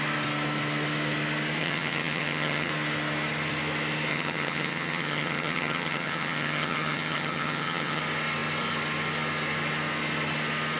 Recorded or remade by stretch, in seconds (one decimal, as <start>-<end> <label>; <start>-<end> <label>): 0.0-1.6 recorded; 1.6-2.7 remade; 2.7-4.1 recorded; 4.1-8.0 remade; 8.0-10.8 recorded